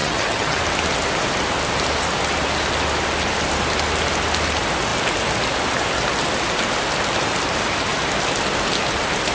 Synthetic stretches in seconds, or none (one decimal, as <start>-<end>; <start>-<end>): 0.0-0.6

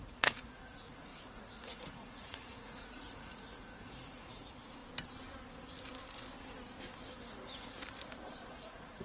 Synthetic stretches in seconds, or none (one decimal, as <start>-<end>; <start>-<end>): 0.0-4.8; 7.2-7.8; 8.5-9.0

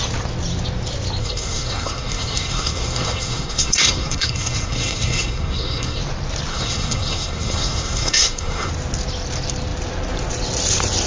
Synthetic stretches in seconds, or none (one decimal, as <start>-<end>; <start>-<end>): 1.2-6.0; 6.5-8.7

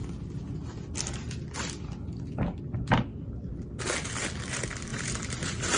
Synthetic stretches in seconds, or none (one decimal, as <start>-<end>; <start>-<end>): 4.9-5.8

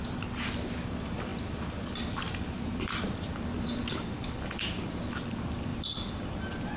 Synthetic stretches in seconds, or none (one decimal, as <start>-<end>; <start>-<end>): 1.3-4.3; 5.7-6.8

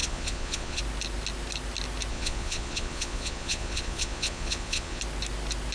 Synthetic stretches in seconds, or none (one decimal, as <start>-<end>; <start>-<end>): 0.0-0.8; 2.1-5.0

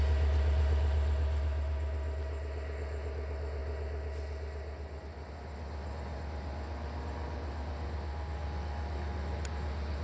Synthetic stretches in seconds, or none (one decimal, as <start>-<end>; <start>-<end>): none

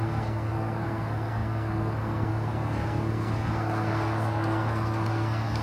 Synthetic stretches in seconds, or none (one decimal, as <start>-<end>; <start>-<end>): 0.0-5.6